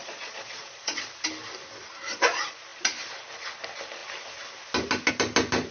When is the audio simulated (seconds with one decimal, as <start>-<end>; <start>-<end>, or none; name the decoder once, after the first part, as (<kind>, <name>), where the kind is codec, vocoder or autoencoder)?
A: 0.0-1.0 (vocoder, Vocos)